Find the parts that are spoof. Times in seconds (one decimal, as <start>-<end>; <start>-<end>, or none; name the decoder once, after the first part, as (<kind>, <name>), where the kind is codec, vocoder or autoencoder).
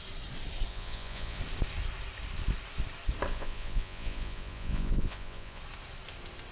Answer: 0.7-1.4 (vocoder, Vocos); 3.3-5.6